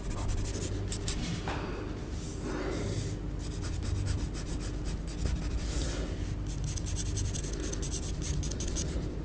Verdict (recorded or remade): recorded